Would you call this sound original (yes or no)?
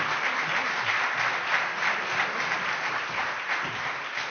yes